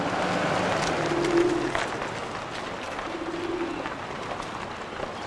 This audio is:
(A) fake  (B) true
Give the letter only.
B